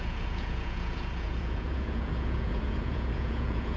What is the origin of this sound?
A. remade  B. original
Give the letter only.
A